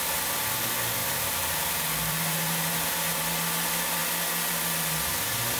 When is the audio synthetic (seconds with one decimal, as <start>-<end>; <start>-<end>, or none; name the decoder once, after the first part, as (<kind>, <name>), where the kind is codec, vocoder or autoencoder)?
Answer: 1.0-3.2 (vocoder, BigVGAN v2)